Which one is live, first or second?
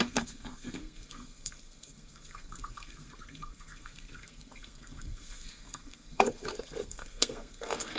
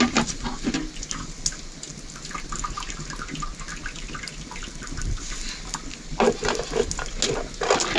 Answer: second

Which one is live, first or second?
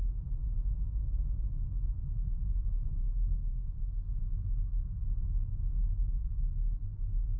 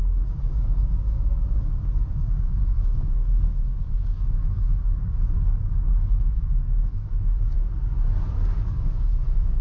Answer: first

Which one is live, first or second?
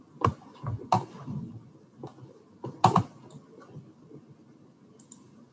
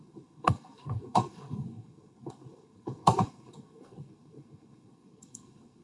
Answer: first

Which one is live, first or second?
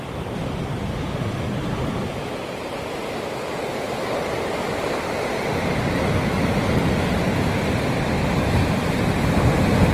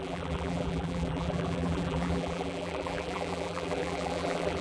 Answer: first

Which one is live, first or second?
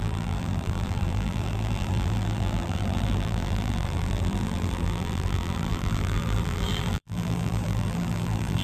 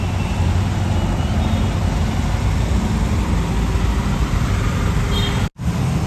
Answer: second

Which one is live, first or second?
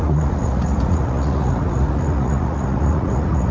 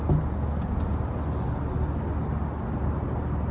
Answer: second